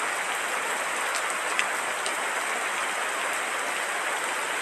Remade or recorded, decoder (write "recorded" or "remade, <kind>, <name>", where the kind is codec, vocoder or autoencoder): recorded